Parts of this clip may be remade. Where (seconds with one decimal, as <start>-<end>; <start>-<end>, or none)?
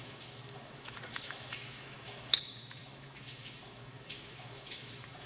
0.0-5.3